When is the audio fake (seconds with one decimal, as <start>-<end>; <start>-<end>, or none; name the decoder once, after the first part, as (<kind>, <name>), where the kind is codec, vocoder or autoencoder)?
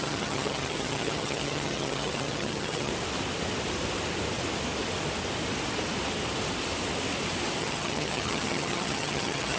0.0-2.9 (vocoder, HiFi-GAN); 7.6-9.6